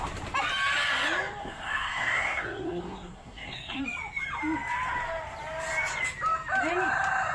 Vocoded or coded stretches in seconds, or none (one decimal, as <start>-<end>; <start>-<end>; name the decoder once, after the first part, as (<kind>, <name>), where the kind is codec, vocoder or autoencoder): 1.4-3.8 (codec, SNAC)